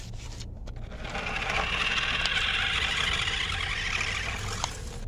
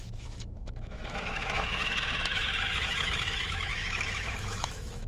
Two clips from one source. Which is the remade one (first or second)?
second